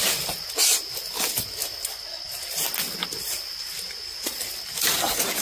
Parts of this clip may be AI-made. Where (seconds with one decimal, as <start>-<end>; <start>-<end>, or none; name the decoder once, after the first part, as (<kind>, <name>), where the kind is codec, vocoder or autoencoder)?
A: none